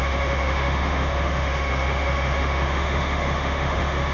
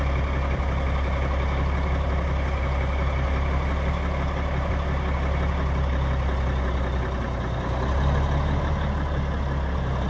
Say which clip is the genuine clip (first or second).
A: second